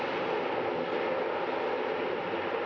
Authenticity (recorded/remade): recorded